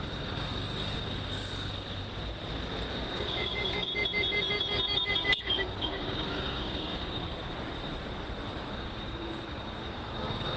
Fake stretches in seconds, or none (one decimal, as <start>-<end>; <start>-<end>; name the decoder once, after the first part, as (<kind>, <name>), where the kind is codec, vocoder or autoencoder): 0.0-2.0 (codec, DAC); 2.9-3.9; 5.4-7.2; 8.7-10.6

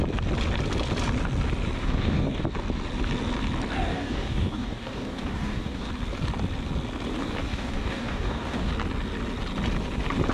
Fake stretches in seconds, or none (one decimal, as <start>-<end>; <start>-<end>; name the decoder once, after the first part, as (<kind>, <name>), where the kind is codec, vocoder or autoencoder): 1.8-2.4 (codec, DAC); 3.9-5.9; 7.5-8.7

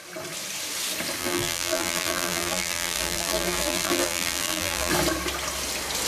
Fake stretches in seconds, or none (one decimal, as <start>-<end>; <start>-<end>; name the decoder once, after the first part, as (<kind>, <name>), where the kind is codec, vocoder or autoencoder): 1.2-4.9 (vocoder, BigVGAN v2)

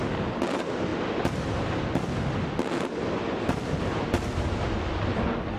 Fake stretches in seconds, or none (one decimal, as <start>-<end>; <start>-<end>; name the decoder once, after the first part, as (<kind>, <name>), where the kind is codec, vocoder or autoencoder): none

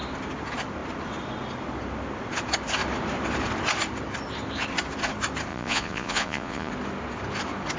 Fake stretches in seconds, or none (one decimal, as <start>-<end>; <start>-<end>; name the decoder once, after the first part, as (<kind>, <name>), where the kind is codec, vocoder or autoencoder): 5.5-6.7 (vocoder, Vocos)